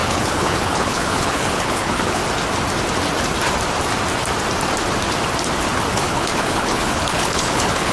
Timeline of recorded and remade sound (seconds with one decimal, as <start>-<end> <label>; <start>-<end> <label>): 0.0-2.2 remade; 2.2-5.9 recorded; 5.9-7.9 remade